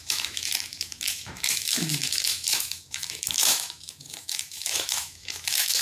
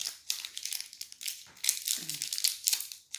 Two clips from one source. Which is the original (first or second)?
second